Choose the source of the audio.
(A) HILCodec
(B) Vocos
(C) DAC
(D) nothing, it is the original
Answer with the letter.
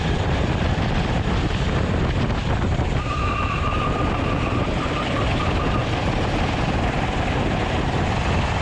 D